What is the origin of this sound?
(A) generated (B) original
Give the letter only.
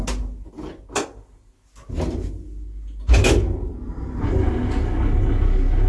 B